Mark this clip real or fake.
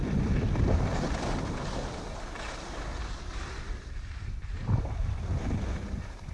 real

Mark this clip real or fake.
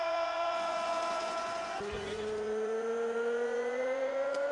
fake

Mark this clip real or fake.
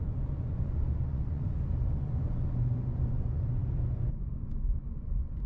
fake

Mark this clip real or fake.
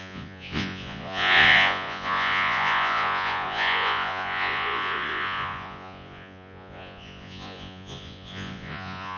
fake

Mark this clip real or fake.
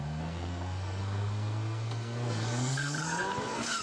fake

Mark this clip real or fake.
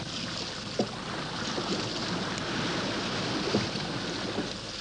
real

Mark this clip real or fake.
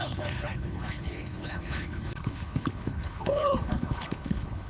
fake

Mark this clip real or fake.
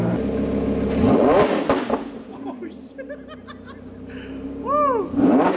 real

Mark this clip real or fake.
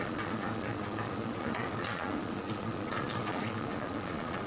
fake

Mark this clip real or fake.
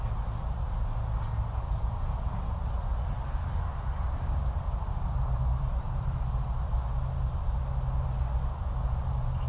real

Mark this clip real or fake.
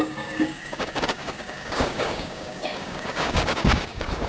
fake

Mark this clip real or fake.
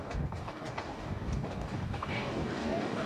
fake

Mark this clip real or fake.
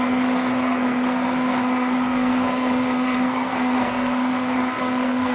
fake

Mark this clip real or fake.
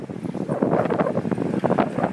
real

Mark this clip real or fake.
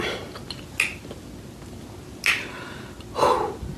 real